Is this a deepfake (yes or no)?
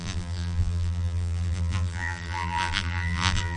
yes